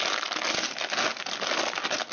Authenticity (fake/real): real